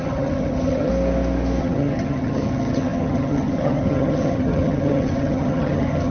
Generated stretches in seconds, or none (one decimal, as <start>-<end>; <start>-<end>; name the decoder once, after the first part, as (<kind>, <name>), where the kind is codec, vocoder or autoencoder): 0.0-0.9 (vocoder, HiFi-GAN); 1.6-6.1